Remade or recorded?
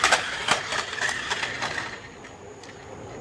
recorded